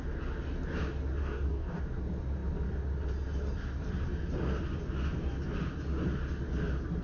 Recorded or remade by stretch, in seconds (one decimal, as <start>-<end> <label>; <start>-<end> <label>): 0.0-1.2 recorded; 1.2-1.8 remade; 1.8-7.0 recorded